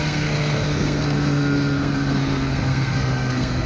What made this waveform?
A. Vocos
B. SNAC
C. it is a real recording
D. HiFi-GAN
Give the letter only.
B